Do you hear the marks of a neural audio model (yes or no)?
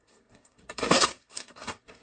yes